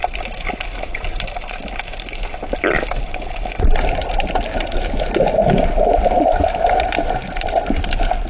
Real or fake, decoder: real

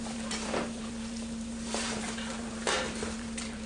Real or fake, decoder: fake, vocoder, BigVGAN v2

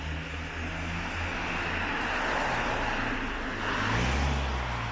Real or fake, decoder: real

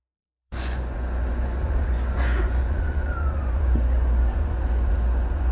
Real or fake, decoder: fake, vocoder, Vocos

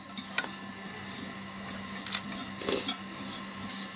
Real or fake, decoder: real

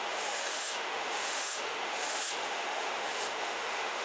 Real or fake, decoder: fake, autoencoder, DAC-VAE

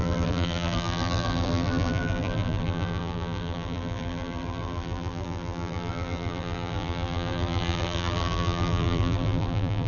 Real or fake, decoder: fake, vocoder, BigVGAN v2